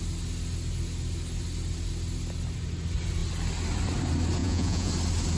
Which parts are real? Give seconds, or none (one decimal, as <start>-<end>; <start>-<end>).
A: 0.0-4.4; 4.9-5.4